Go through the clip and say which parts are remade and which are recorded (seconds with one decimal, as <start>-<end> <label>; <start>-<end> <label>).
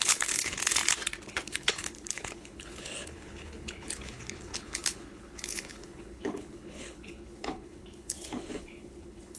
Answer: 0.0-0.8 remade; 0.8-1.3 recorded; 1.3-9.4 remade